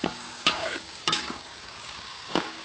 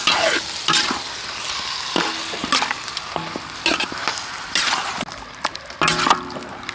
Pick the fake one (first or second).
first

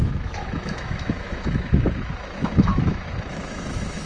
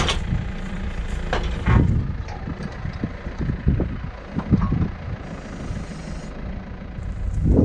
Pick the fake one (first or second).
first